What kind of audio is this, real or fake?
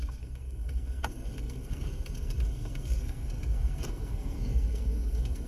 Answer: fake